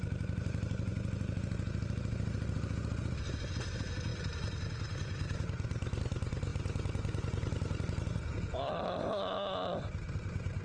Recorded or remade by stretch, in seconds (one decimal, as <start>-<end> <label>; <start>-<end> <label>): 0.0-10.6 recorded